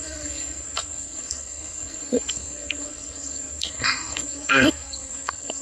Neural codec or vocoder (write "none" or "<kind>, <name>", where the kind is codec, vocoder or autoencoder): codec, SNAC